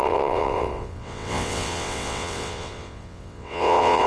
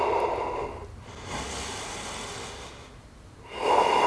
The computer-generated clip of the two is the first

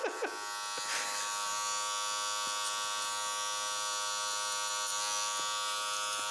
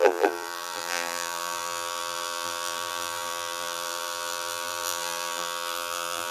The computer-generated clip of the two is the second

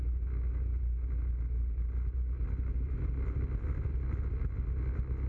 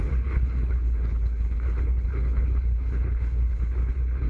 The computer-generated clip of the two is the second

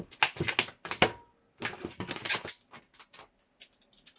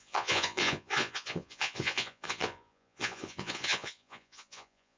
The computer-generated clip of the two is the second